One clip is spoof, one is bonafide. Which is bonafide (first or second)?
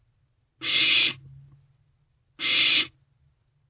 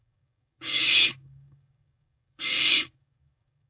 first